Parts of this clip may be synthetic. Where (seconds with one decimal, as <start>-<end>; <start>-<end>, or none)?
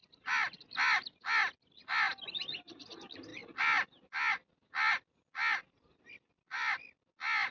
none